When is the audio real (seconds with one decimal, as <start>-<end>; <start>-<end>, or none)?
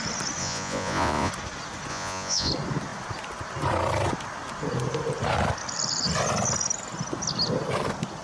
0.0-0.4; 1.3-1.9; 2.5-8.2